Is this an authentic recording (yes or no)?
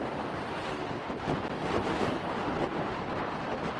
yes